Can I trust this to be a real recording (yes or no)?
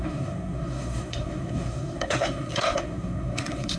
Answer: no